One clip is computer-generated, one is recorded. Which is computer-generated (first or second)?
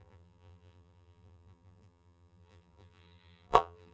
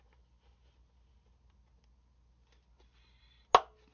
first